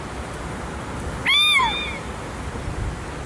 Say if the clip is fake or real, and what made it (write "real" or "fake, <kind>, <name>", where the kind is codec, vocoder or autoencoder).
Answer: real